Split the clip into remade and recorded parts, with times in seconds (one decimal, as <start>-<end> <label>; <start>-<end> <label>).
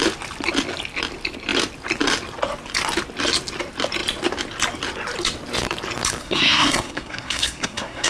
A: 0.0-6.2 recorded; 6.2-8.1 remade